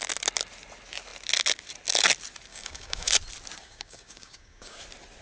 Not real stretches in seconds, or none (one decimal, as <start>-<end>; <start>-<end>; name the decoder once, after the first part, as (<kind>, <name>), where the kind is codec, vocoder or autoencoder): 2.5-3.1 (codec, DAC); 3.6-4.8